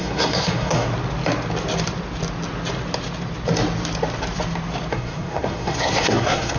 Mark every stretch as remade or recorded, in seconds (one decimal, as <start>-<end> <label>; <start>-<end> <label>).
0.0-0.9 remade; 0.9-4.9 recorded; 4.9-6.6 remade

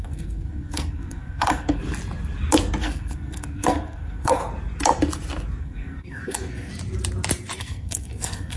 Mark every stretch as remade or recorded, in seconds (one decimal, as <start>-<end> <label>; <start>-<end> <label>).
0.0-1.8 remade; 1.8-2.8 recorded; 2.8-4.4 remade; 4.4-5.6 recorded; 5.6-6.7 remade; 6.7-7.6 recorded; 7.6-8.6 remade

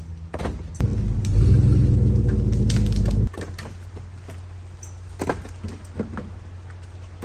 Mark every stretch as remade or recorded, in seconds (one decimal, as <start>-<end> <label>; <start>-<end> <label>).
0.0-7.2 recorded